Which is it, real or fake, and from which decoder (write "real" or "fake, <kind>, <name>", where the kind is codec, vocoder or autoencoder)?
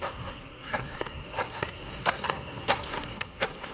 fake, codec, SNAC